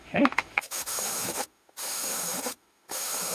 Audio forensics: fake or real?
fake